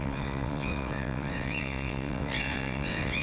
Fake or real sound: fake